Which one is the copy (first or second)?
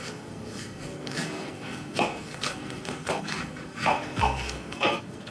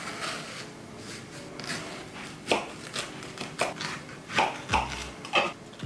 first